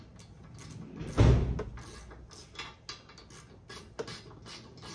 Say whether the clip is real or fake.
real